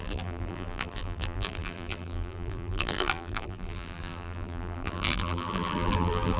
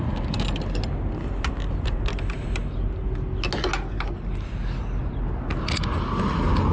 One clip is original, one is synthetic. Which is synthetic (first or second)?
first